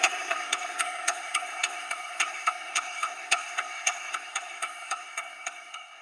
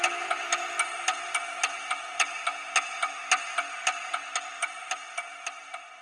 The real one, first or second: second